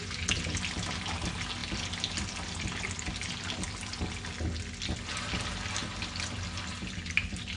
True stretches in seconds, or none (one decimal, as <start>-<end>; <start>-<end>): 0.0-7.6